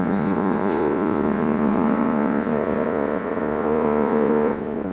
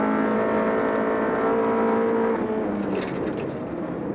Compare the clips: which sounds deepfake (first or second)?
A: first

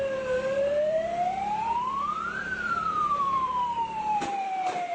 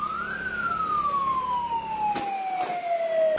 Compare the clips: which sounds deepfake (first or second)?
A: first